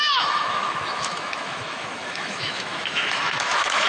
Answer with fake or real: fake